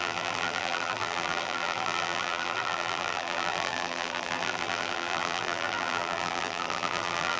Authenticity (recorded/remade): remade